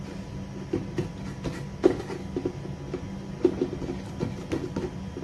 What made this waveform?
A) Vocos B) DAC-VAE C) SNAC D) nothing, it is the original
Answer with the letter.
D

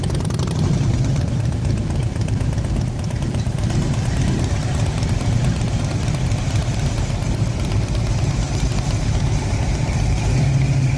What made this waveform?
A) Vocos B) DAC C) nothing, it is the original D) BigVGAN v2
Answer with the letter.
D